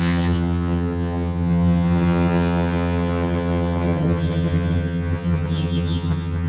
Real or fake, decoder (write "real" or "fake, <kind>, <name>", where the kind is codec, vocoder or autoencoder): fake, vocoder, HiFi-GAN